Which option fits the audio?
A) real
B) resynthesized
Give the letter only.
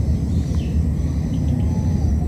B